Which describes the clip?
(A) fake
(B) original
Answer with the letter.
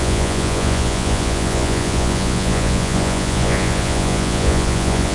A